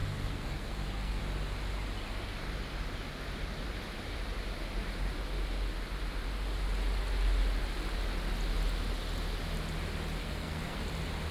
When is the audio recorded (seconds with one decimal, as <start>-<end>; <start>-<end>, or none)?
1.2-10.2; 10.8-11.3